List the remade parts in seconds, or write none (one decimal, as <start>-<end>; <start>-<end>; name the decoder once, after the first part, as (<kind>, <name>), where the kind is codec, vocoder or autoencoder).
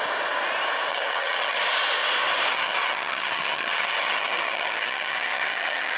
0.9-1.6 (vocoder, HiFi-GAN); 2.5-6.0